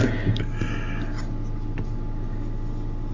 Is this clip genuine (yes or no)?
yes